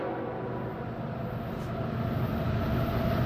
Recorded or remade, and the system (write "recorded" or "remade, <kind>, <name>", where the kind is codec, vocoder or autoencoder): recorded